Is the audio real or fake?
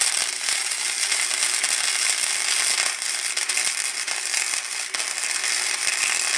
real